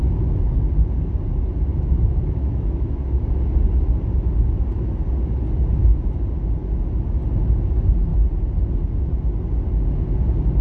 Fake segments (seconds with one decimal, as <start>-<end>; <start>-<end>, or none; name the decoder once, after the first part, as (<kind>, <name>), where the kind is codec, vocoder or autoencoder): 1.7-3.1 (autoencoder, DAC-VAE)